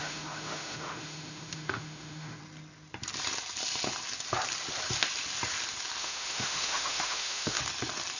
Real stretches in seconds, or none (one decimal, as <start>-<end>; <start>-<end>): 2.4-6.0; 7.6-8.2